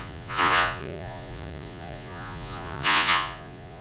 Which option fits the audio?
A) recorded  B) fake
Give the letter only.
B